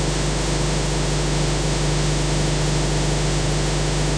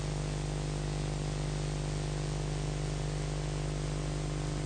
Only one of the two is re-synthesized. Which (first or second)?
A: first